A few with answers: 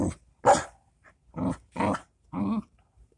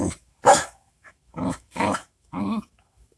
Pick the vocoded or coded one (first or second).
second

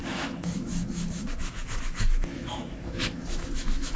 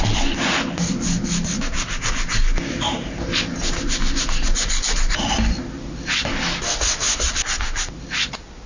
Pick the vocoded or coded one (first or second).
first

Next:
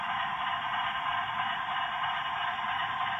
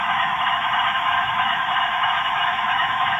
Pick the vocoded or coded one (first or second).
second